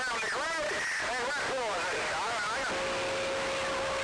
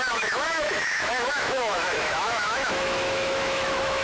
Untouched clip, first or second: first